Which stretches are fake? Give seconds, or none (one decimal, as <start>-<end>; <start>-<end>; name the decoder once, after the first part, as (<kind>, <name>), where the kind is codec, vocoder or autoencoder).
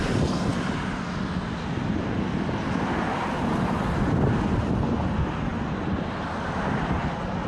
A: none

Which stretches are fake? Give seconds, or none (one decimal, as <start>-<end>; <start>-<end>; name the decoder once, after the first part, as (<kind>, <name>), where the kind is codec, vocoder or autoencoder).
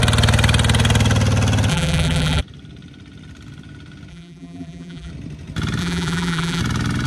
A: 1.7-2.4 (vocoder, BigVGAN v2); 4.1-5.1; 5.8-6.6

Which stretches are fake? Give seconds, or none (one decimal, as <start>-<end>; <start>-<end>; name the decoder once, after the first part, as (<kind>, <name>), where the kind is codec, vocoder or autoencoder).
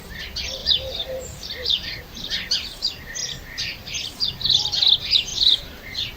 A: 0.6-2.8 (vocoder, BigVGAN v2); 3.2-4.3; 5.3-6.2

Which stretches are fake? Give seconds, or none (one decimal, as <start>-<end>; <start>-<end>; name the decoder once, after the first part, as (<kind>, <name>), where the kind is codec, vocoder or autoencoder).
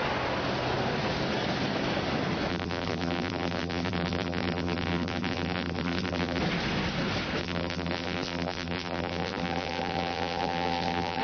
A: 2.5-6.4 (vocoder, BigVGAN v2); 7.4-11.2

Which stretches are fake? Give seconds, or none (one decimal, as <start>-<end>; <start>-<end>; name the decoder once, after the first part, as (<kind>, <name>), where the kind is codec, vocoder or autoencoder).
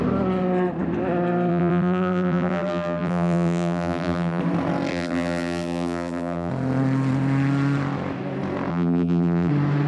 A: 1.5-4.4 (vocoder, BigVGAN v2); 4.9-6.5; 8.7-9.5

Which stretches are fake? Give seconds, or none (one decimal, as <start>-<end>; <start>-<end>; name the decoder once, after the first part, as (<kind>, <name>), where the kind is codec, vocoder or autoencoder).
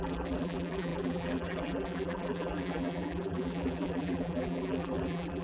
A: 0.0-5.4 (vocoder, BigVGAN v2)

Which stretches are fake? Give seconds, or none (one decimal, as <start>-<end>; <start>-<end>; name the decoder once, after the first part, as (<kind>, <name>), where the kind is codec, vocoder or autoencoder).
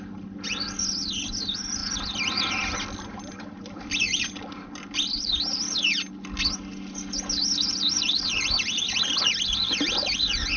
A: none